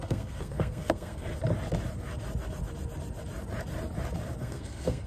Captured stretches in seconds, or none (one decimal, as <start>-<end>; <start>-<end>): 1.3-4.4